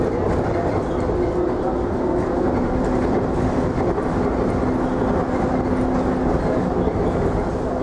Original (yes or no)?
yes